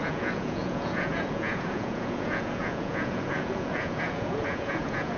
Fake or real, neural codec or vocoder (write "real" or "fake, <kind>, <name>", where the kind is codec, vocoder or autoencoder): fake, vocoder, Vocos